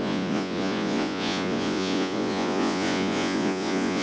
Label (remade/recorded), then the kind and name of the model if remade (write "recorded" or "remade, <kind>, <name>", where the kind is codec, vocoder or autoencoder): remade, vocoder, Vocos